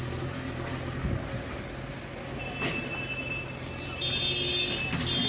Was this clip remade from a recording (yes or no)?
no